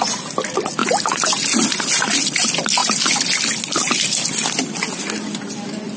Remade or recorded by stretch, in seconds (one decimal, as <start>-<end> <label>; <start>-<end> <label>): 0.0-6.0 recorded